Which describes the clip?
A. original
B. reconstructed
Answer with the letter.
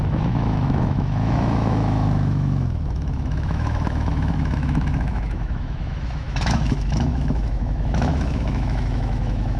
B